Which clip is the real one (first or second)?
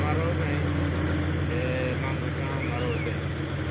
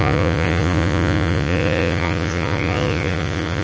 first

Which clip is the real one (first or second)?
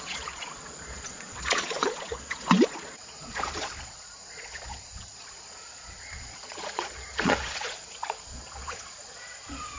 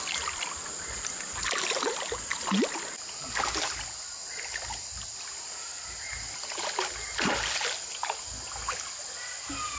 second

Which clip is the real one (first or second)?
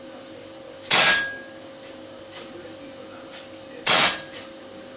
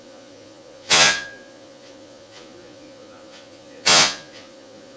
first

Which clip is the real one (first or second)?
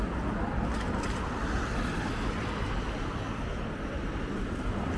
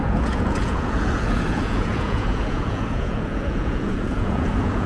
first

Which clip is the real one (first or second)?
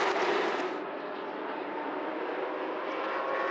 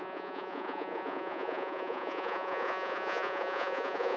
first